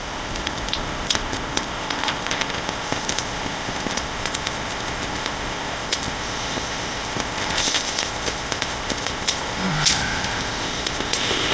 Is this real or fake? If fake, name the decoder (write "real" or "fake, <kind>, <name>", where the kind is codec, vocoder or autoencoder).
fake, codec, ZipCodec